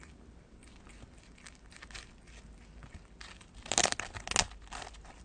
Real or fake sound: real